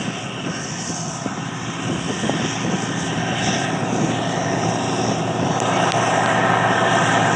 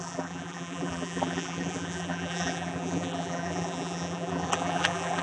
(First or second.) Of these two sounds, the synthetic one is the second